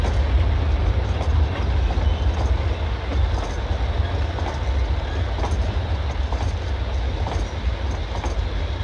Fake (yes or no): no